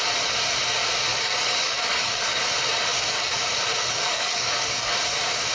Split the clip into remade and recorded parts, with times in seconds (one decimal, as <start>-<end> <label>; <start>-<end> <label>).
0.0-1.1 recorded; 1.1-2.4 remade; 2.4-2.9 recorded; 2.9-4.9 remade; 4.9-5.5 recorded